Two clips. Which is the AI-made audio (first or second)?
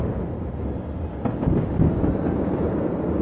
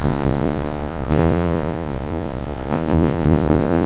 second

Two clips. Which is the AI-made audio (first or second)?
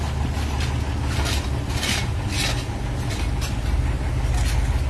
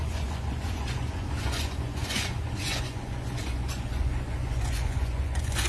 second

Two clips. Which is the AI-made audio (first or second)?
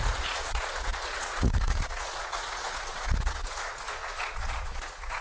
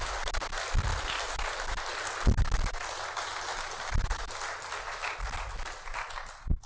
first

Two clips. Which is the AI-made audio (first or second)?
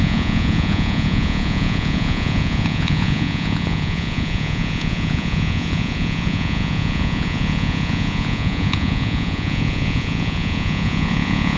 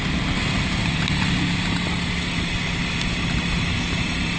first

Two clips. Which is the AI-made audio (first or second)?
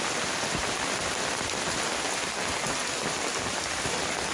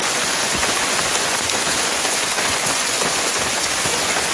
second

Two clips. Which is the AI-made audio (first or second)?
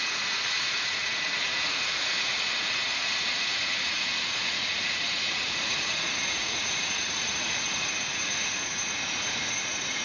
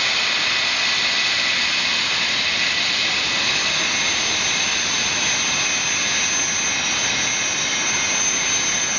first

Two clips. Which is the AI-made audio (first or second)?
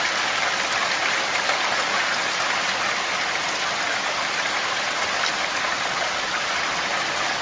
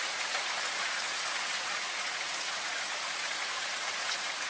second